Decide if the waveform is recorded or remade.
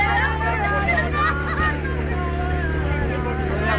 recorded